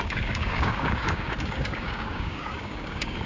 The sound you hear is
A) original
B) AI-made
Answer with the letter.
B